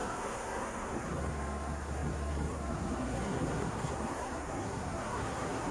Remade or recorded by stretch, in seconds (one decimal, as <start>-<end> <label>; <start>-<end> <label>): 0.0-5.7 remade